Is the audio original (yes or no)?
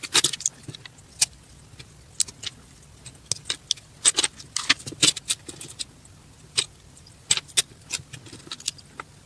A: yes